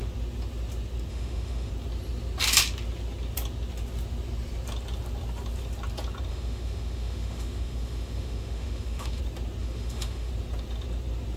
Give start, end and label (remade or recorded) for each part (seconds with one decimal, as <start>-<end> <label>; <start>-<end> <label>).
0.0-1.1 recorded; 1.1-1.7 remade; 1.7-6.3 recorded; 6.3-9.2 remade; 9.2-9.6 recorded; 9.6-10.3 remade; 10.3-11.4 recorded